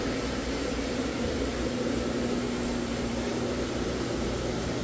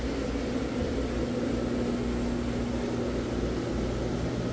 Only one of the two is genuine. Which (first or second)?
second